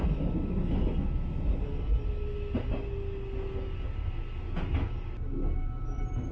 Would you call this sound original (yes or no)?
yes